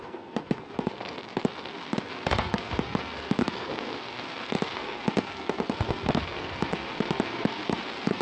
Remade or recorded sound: remade